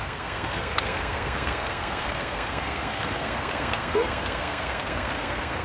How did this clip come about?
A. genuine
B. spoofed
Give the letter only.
B